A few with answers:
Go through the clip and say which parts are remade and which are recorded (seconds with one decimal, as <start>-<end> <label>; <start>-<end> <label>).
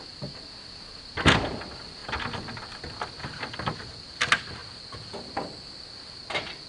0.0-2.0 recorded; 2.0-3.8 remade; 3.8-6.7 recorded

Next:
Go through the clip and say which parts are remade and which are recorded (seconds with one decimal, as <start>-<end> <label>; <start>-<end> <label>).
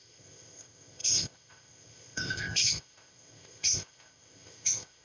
0.0-5.0 remade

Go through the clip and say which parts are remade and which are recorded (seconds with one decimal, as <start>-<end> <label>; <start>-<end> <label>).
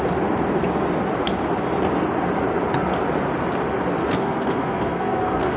0.0-4.0 recorded; 4.0-5.6 remade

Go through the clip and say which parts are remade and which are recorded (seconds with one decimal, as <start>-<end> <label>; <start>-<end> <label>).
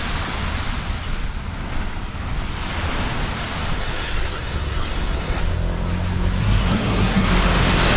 0.0-3.8 recorded; 3.8-5.4 remade; 5.4-6.4 recorded; 6.4-7.3 remade; 7.3-8.0 recorded